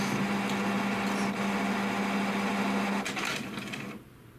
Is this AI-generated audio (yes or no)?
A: no